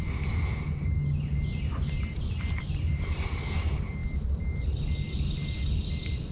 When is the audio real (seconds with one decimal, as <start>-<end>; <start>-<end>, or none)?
0.0-6.3